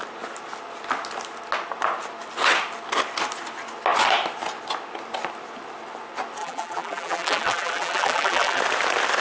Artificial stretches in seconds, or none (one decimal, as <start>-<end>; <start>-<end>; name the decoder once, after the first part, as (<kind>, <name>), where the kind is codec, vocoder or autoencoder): 6.4-8.6 (vocoder, BigVGAN v2)